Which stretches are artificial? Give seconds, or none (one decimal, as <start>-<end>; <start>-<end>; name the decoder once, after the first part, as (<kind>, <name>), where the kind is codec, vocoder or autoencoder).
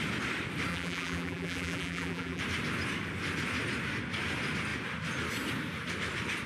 0.7-2.4 (vocoder, BigVGAN v2)